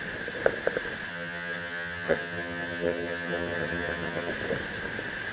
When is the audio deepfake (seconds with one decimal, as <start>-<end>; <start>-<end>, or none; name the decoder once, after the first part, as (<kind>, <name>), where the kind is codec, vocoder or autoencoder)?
1.1-4.3 (vocoder, HiFi-GAN)